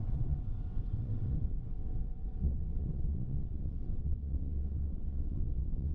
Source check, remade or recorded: remade